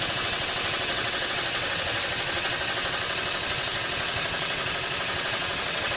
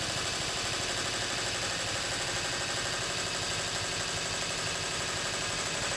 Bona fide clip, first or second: second